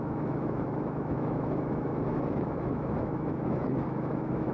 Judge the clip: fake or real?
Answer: fake